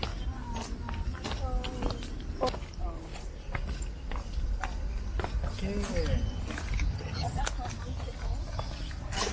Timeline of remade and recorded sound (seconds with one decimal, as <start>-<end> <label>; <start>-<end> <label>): 0.0-6.9 recorded; 6.9-7.4 remade; 7.4-9.3 recorded